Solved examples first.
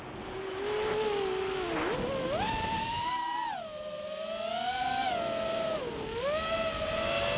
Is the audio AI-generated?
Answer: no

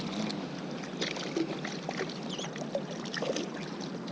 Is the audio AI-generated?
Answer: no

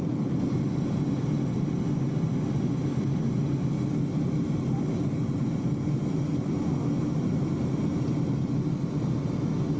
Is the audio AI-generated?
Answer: no